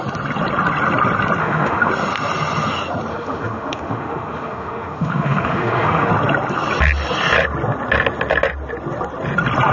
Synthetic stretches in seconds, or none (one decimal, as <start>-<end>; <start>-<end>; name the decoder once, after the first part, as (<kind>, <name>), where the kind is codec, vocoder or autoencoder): 1.4-1.9 (autoencoder, DAC-VAE); 3.1-6.1